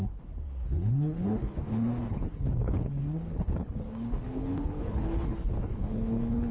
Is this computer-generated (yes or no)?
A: yes